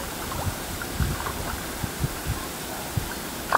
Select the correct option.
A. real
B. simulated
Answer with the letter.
B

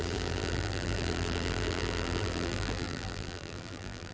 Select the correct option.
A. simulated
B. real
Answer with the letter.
A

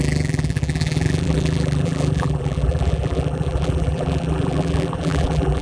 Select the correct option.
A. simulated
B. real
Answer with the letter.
A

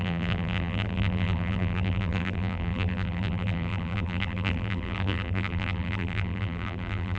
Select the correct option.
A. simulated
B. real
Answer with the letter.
A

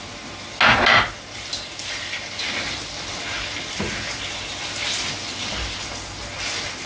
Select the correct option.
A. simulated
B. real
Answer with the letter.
B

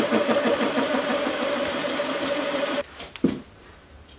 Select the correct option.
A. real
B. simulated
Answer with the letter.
B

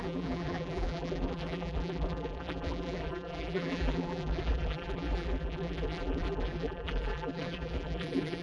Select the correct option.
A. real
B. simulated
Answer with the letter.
B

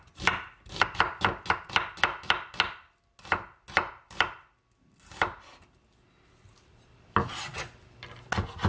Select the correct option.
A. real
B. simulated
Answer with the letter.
A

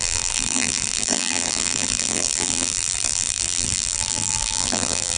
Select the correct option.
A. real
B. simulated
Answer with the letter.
B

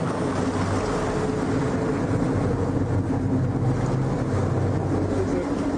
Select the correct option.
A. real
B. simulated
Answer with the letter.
A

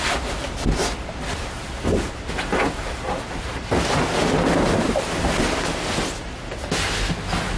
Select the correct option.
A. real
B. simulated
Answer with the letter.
A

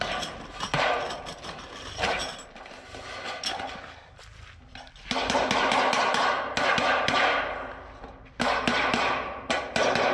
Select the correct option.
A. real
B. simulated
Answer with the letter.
A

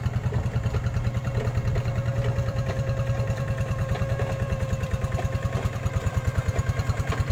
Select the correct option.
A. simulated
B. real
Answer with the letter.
A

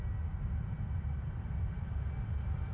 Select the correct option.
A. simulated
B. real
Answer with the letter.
B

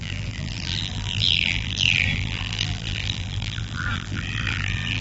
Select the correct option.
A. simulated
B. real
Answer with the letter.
A